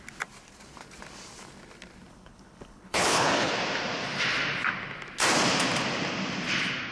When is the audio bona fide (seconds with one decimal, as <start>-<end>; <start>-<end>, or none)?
0.0-2.1; 3.5-6.9